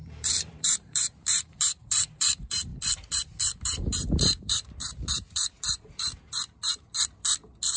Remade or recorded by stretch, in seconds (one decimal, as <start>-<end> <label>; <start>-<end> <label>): 0.0-2.7 remade; 2.7-3.6 recorded; 3.6-5.4 remade; 5.4-7.8 recorded